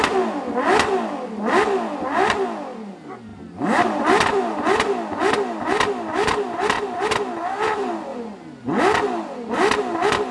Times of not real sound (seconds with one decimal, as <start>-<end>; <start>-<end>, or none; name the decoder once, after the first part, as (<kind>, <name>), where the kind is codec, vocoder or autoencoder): none